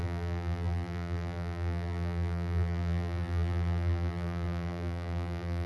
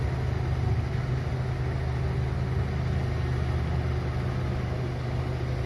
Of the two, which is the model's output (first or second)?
first